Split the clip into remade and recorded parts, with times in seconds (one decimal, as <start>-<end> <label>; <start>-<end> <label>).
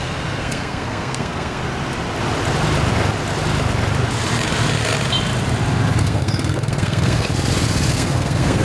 0.0-1.6 remade; 1.6-6.0 recorded; 6.0-7.3 remade; 7.3-7.9 recorded; 7.9-8.6 remade